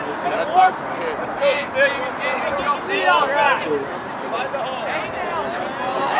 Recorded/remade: recorded